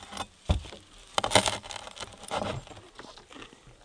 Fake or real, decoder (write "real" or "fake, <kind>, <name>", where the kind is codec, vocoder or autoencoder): real